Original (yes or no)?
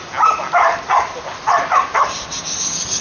yes